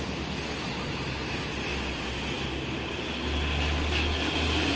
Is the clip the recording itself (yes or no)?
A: yes